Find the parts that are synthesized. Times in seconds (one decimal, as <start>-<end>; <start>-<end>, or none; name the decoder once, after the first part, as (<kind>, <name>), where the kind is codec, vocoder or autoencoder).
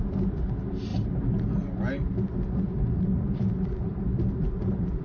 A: none